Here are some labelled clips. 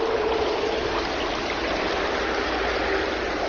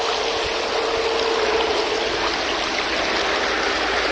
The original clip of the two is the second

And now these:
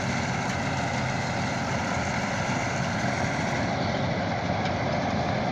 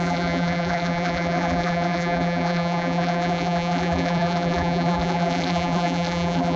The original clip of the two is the first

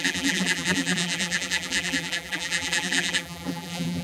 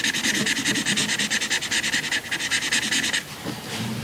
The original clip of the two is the second